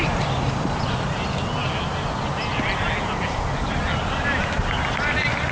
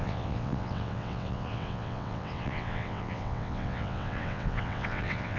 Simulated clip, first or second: second